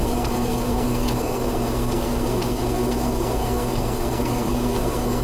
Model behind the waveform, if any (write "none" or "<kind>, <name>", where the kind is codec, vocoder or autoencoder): codec, SNAC